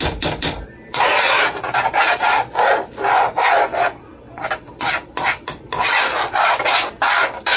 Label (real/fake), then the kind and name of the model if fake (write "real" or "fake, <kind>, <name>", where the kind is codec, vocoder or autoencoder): real